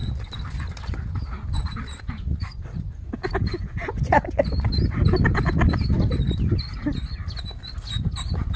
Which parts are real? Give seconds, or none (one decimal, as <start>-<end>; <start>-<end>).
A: 0.0-1.1; 1.6-2.4; 3.8-7.9